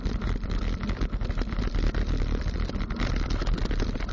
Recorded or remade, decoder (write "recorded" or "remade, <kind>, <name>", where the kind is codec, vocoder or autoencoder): recorded